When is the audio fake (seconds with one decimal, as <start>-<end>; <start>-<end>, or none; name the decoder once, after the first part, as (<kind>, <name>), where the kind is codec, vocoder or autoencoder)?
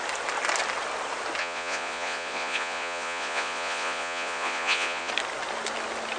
1.4-5.1 (vocoder, Vocos)